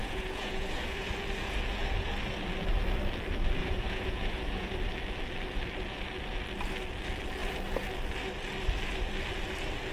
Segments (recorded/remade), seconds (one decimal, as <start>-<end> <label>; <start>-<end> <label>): 0.0-1.1 remade; 1.1-3.6 recorded; 3.6-4.7 remade; 4.7-9.9 recorded